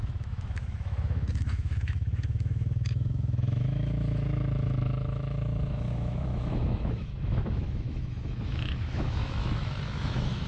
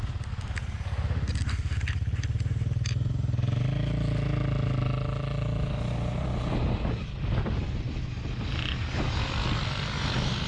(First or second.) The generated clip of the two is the first